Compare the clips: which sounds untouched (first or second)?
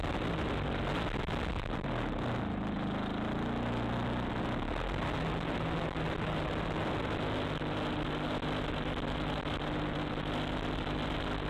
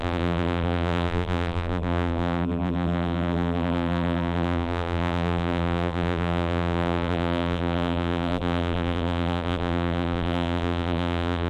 first